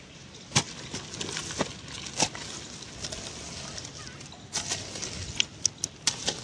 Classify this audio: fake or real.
real